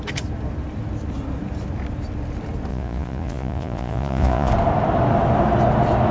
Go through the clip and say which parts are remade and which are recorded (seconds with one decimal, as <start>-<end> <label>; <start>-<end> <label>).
0.0-2.7 recorded; 2.7-4.5 remade; 4.5-6.1 recorded